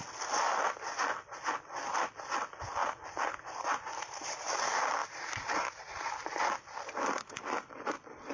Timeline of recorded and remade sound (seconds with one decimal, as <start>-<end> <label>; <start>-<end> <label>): 0.0-2.8 recorded; 2.8-4.6 remade; 4.6-5.0 recorded; 5.0-6.4 remade; 6.4-8.3 recorded